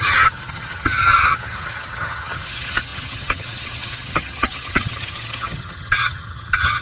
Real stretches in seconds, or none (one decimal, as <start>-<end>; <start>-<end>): none